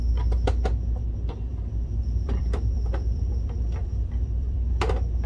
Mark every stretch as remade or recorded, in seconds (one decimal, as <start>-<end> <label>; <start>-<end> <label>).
0.0-1.5 recorded; 1.5-4.7 remade; 4.7-5.3 recorded